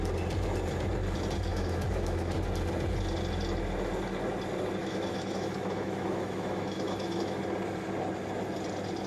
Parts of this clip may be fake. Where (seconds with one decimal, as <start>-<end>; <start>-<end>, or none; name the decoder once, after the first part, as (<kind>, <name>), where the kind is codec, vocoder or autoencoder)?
1.5-2.4 (autoencoder, DAC-VAE); 4.8-7.4